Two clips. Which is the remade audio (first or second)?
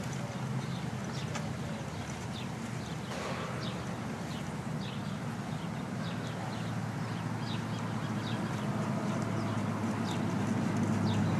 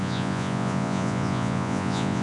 second